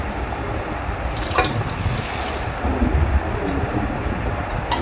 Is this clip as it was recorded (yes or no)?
yes